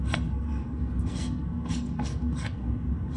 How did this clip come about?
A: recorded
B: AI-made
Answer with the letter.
B